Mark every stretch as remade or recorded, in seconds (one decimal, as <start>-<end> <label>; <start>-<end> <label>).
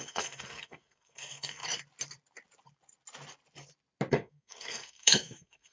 0.0-1.6 remade; 1.6-4.1 recorded; 4.1-5.7 remade